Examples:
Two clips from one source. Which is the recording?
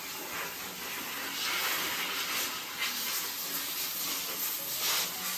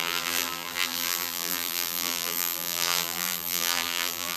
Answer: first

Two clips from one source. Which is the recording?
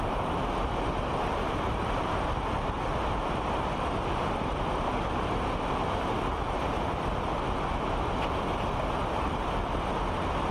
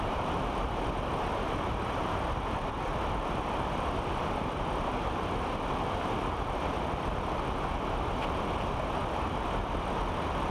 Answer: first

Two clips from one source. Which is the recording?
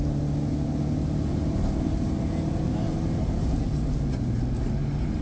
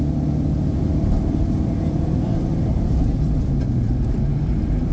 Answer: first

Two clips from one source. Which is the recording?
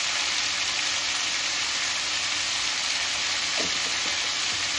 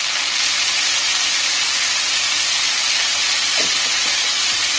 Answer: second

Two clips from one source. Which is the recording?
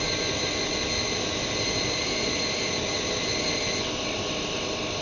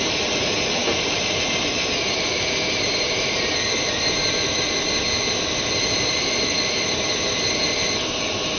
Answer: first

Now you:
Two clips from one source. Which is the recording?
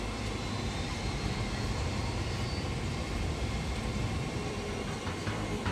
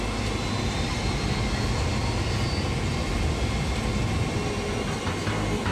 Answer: second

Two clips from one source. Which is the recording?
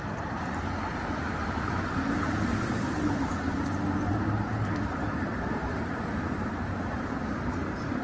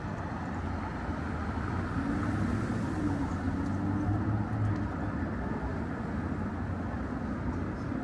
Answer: second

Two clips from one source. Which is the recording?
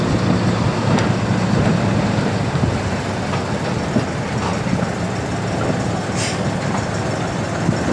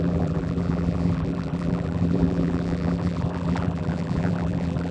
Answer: first